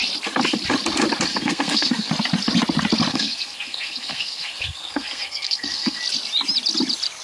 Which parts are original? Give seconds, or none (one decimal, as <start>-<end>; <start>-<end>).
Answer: 0.0-1.3; 2.1-3.1; 6.0-7.2